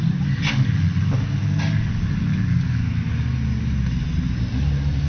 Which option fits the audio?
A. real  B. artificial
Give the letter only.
A